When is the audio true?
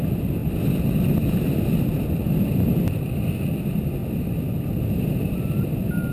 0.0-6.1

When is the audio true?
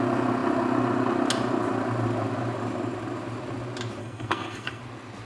0.0-4.0; 4.8-5.2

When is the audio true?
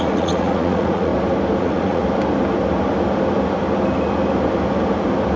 1.1-1.6; 2.0-5.4